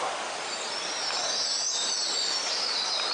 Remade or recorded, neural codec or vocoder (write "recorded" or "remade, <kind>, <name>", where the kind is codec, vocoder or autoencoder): recorded